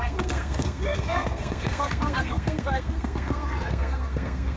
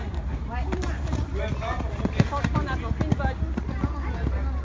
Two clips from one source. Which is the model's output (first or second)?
first